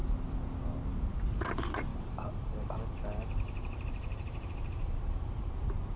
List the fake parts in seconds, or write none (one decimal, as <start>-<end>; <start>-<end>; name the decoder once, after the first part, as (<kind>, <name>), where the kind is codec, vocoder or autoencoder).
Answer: 1.9-5.5 (vocoder, BigVGAN v2)